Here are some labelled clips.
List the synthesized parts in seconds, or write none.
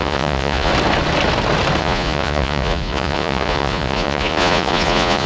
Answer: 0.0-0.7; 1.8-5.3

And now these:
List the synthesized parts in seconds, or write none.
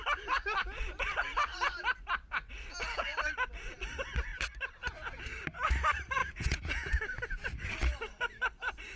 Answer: 6.2-7.0